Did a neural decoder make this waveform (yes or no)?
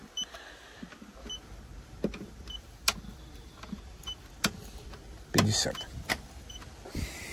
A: yes